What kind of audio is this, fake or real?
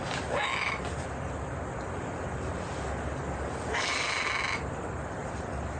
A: real